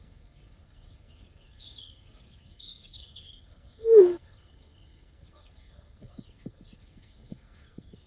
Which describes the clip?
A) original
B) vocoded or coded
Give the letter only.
B